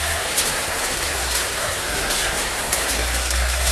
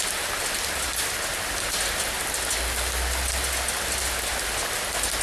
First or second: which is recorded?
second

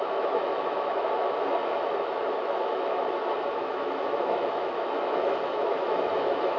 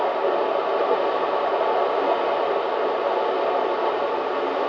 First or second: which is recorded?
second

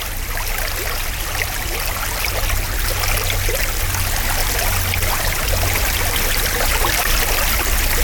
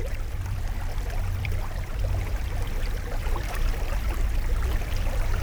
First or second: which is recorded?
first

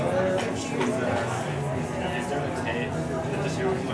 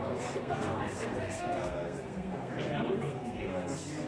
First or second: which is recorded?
first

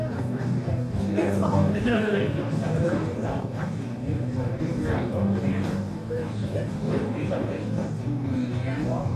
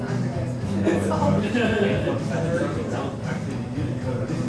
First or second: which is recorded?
second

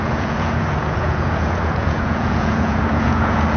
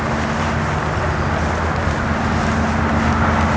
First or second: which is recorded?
second